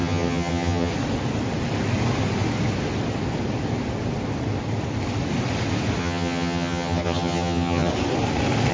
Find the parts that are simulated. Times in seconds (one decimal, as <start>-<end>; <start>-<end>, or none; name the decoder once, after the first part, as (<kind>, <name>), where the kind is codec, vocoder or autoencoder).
0.0-0.9 (vocoder, HiFi-GAN); 6.0-7.9